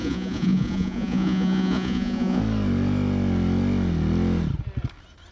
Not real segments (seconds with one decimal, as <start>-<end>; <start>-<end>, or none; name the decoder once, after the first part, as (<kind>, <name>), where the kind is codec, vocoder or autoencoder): 0.0-2.4 (vocoder, Vocos)